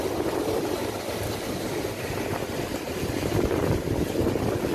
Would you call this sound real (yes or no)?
yes